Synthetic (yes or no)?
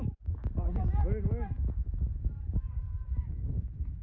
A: no